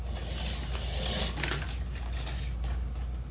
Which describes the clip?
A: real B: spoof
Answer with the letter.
A